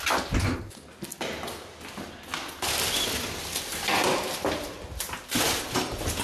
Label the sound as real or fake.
real